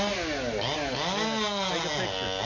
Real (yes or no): yes